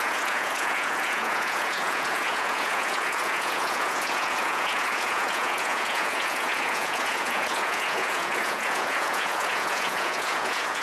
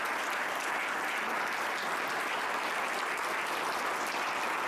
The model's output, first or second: first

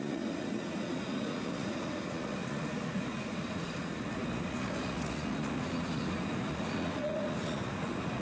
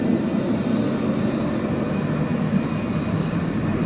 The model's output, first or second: first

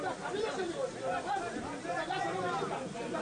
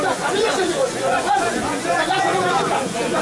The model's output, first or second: second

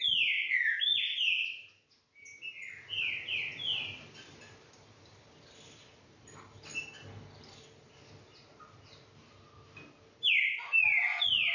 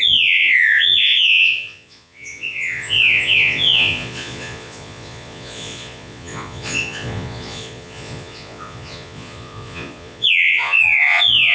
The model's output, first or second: second